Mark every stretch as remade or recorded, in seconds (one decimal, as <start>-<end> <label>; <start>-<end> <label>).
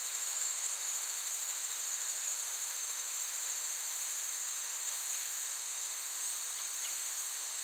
0.0-6.3 remade; 6.3-6.9 recorded; 6.9-7.6 remade